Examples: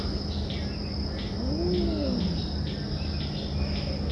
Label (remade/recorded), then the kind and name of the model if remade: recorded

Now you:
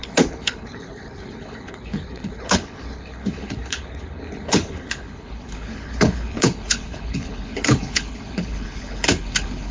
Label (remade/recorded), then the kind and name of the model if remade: remade, codec, HILCodec